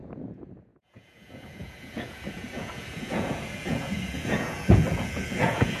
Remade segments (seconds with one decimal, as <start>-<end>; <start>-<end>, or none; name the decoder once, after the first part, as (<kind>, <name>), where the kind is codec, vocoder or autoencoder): 0.0-5.8 (vocoder, Vocos)